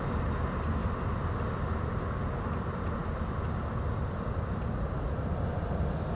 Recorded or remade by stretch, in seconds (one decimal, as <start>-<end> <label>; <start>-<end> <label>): 0.0-6.2 recorded